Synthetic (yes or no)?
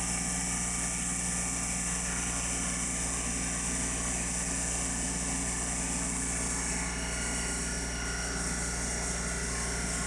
no